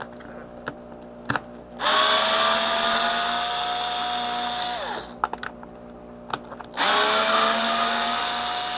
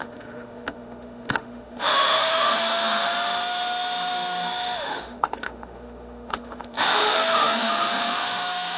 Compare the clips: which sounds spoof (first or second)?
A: second